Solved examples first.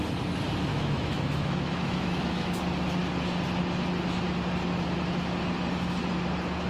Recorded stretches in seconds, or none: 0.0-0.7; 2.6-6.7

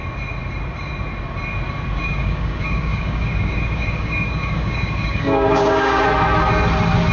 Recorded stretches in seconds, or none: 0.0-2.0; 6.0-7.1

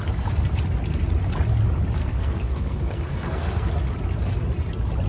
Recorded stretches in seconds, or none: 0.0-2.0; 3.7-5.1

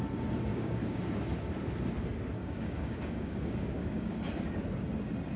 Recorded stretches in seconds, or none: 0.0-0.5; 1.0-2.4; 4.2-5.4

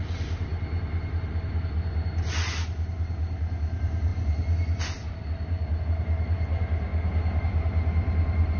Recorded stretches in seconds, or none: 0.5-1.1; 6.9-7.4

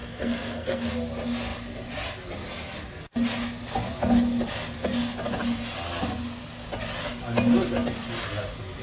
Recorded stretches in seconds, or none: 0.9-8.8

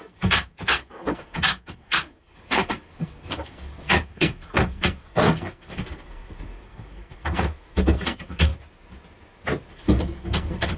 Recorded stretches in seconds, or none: 8.5-9.7